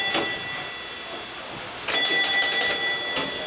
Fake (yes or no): no